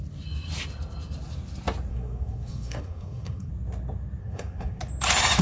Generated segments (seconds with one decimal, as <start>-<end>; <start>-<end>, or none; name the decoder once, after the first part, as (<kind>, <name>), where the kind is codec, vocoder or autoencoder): 1.9-3.5 (codec, SNAC); 4.2-4.8